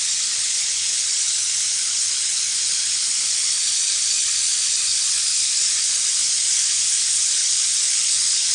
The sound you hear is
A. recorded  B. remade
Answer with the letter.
B